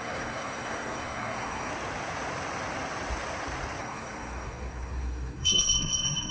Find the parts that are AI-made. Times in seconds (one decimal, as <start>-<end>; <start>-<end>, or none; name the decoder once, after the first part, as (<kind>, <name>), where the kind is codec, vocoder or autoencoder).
0.0-1.7 (codec, SNAC); 3.8-6.3